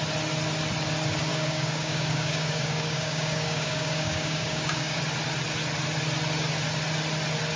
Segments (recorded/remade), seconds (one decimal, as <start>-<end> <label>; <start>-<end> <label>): 0.0-1.3 recorded; 1.3-5.0 remade; 5.0-7.6 recorded